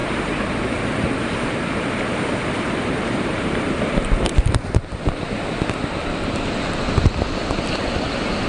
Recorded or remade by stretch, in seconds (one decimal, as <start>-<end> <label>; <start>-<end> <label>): 0.0-3.6 remade; 3.6-8.5 recorded